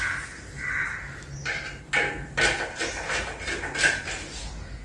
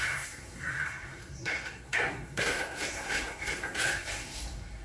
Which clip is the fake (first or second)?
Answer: second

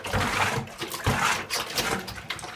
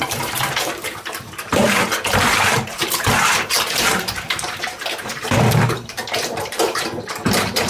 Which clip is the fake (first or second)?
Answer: second